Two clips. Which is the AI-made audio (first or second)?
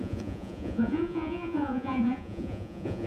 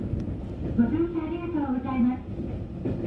first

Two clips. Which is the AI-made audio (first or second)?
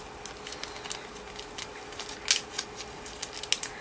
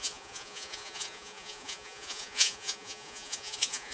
second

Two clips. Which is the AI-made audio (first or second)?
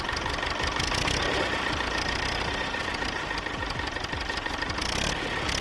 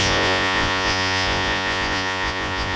second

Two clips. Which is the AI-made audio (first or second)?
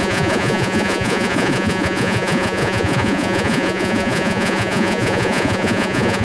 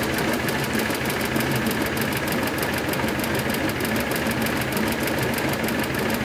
first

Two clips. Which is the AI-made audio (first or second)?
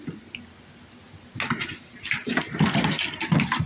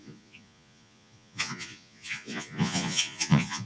second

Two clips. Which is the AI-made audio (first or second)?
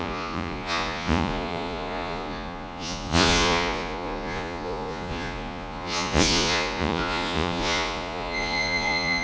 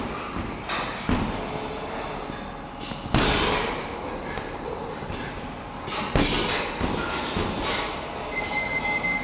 first